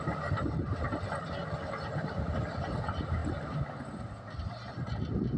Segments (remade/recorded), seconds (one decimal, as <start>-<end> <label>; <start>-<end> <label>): 0.0-5.4 recorded